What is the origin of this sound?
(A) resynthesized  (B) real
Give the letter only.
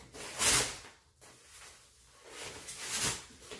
B